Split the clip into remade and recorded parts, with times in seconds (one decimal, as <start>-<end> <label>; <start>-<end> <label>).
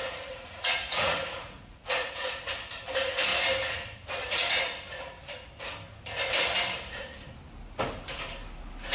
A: 0.0-2.5 remade; 2.5-8.9 recorded